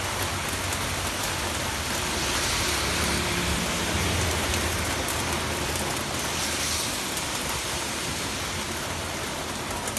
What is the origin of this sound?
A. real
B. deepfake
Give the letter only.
A